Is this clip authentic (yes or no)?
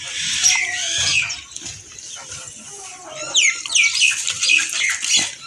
yes